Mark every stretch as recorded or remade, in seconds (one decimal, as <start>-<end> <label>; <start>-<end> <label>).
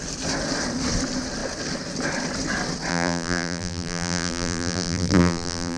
0.0-2.9 recorded; 2.9-5.8 remade